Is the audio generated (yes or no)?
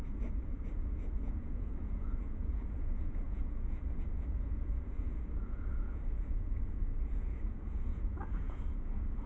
yes